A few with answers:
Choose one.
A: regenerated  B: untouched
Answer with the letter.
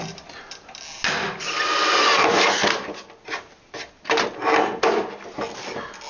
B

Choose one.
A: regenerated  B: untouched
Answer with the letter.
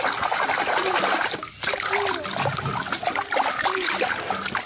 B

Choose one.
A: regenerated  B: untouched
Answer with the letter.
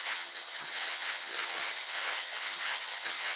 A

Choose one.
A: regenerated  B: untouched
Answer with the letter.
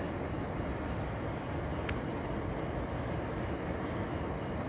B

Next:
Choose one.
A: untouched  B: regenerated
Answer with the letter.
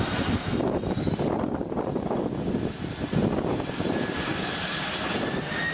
A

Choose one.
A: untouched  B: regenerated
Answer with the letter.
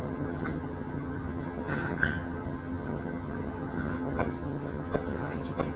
B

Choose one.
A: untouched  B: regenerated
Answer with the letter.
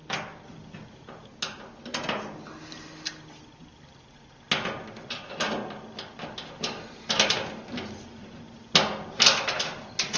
A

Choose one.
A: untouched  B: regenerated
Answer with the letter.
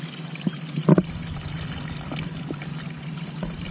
A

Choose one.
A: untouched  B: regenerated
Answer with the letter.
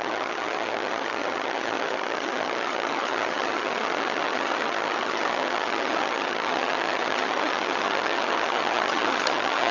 B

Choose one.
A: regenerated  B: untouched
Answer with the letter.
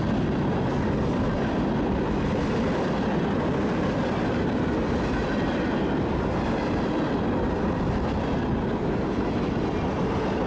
B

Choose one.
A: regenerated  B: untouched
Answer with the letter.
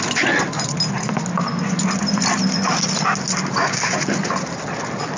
B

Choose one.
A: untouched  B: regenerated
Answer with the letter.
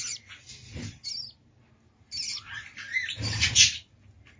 A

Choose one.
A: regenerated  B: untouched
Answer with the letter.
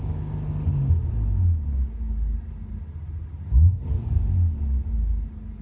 B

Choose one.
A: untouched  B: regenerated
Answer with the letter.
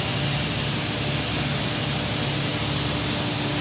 A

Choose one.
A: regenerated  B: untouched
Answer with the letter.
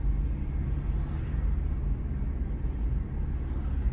B